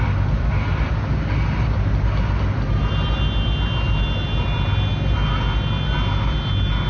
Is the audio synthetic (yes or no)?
no